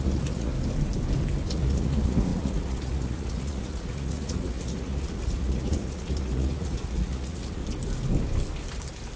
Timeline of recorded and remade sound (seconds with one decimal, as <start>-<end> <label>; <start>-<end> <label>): 0.0-0.5 remade; 0.5-1.5 recorded; 1.5-7.6 remade; 7.6-9.2 recorded